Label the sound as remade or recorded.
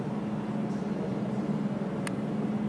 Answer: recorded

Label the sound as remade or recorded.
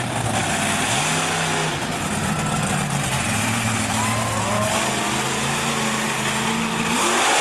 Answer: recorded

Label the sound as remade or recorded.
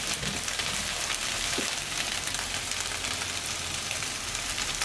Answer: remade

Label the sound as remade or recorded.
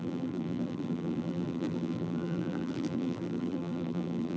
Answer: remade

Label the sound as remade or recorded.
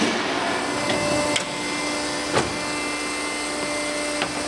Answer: recorded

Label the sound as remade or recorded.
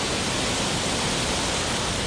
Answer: recorded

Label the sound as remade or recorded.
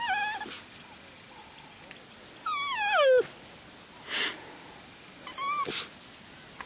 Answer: recorded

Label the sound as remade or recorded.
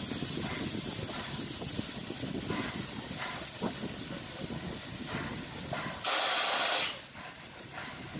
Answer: recorded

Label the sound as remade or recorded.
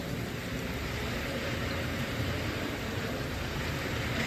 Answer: remade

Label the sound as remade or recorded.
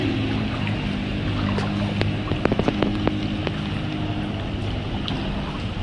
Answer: recorded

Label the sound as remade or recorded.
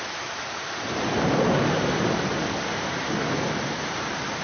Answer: remade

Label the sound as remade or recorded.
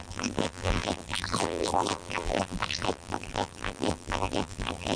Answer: remade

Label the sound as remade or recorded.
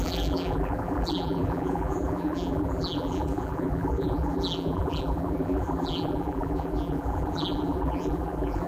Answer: remade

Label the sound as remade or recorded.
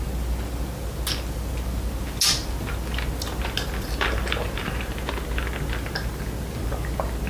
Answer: recorded